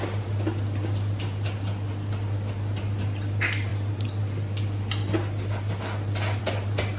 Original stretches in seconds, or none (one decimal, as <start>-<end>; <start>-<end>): 0.0-7.0